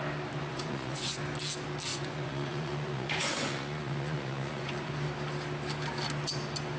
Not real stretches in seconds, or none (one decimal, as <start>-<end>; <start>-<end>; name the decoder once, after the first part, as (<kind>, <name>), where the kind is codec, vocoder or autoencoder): 0.4-1.2 (vocoder, Vocos); 1.9-4.9